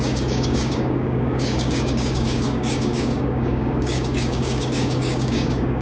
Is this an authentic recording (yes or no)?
no